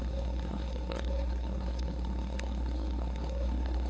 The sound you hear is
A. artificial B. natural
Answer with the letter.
A